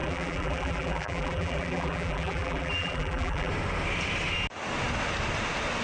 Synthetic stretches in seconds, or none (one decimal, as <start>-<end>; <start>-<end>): 0.0-3.5